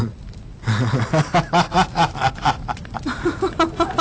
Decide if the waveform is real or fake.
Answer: real